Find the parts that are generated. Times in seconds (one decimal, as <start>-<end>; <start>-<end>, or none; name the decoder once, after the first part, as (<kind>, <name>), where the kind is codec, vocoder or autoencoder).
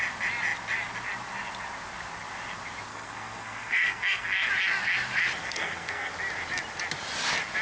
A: 2.9-4.5 (codec, SNAC); 5.4-6.1